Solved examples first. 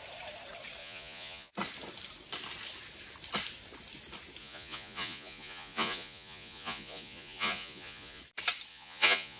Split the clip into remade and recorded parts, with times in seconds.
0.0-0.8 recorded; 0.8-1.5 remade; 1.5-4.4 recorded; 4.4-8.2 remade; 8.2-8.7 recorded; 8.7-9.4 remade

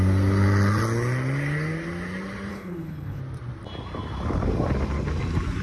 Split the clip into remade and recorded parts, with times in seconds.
0.0-2.5 recorded; 2.5-3.2 remade; 3.2-5.6 recorded

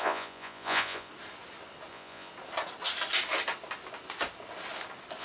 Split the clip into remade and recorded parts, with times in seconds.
0.0-1.1 remade; 1.1-1.9 recorded; 1.9-2.3 remade; 2.3-5.2 recorded

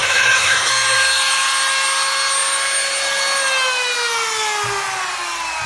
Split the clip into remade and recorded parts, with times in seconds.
0.0-0.7 remade; 0.7-5.7 recorded

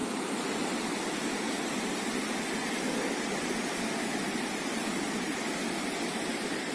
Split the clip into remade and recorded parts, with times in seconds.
0.0-0.9 remade; 0.9-2.6 recorded; 2.6-6.7 remade

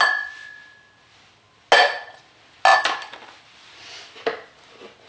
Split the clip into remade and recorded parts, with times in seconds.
0.0-5.1 recorded

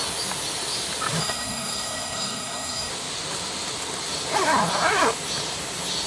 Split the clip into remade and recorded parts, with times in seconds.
0.0-1.2 recorded; 1.2-2.9 remade; 2.9-6.1 recorded